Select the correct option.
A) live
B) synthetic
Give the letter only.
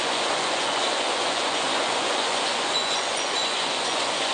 B